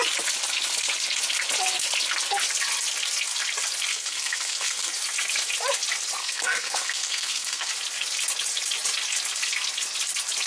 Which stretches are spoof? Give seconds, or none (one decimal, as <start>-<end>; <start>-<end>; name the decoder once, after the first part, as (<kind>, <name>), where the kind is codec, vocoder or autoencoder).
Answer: 3.9-4.9 (codec, SNAC); 6.2-7.7